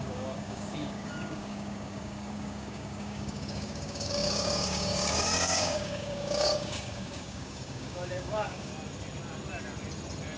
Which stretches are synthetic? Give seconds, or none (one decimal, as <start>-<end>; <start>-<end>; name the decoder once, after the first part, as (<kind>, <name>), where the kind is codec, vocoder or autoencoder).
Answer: 0.0-8.7 (codec, DAC)